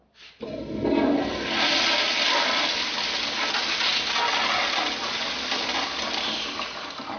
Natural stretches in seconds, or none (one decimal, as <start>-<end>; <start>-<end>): 0.0-7.2